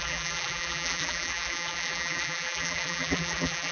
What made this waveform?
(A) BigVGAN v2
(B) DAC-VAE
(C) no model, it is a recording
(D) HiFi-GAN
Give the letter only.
A